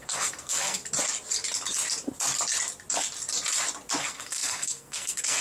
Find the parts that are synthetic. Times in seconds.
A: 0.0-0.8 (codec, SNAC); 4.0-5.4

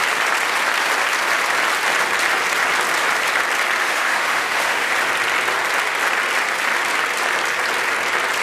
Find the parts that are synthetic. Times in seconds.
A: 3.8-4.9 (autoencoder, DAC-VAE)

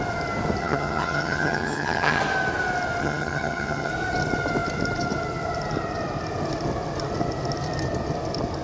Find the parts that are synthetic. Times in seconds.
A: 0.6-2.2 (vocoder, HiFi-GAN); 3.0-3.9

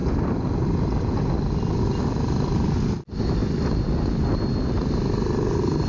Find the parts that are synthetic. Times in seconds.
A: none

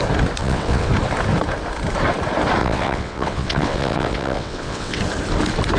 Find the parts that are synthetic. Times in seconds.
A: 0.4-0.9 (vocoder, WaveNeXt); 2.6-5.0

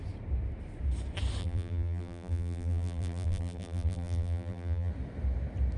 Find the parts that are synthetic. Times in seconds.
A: 1.4-4.9 (vocoder, BigVGAN v2)

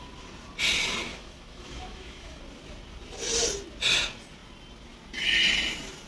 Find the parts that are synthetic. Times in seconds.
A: 1.1-2.4 (autoencoder, DAC-VAE)

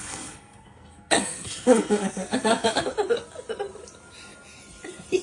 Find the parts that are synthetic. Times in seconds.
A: 0.0-2.9 (codec, SNAC)